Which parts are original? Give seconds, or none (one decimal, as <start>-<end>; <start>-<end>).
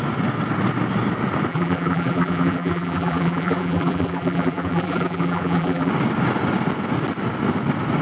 0.0-1.5; 5.9-8.0